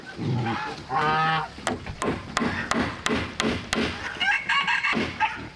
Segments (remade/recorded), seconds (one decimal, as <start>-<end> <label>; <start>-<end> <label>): 0.0-5.6 recorded